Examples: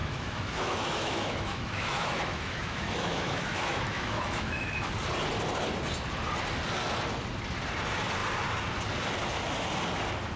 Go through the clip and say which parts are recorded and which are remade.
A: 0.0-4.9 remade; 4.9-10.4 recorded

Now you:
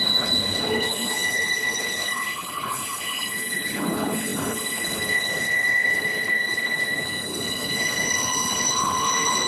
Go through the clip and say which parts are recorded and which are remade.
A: 0.0-9.5 remade

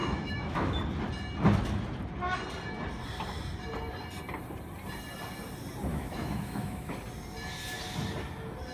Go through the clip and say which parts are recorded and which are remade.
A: 0.0-0.8 remade; 0.8-5.9 recorded; 5.9-6.9 remade; 6.9-8.7 recorded

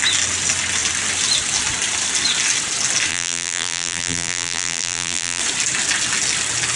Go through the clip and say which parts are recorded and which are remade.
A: 0.0-3.1 recorded; 3.1-5.4 remade; 5.4-6.8 recorded